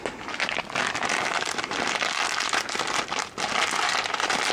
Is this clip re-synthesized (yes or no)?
no